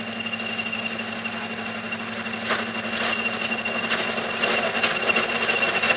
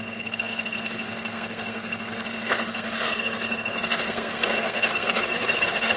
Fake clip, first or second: second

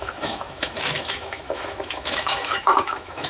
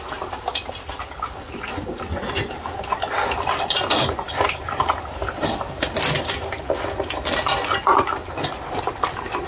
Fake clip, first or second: first